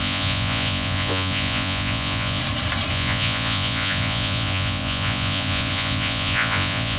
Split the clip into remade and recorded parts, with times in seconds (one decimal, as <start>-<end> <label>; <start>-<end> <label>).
0.0-2.4 remade; 2.4-2.9 recorded; 2.9-7.0 remade